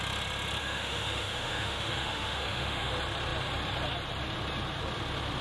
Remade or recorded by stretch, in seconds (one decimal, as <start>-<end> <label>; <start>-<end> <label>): 0.0-0.6 recorded; 0.6-2.9 remade; 2.9-5.4 recorded